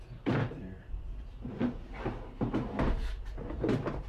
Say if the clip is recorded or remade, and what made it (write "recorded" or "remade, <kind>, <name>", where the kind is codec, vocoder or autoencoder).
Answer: remade, vocoder, BigVGAN v2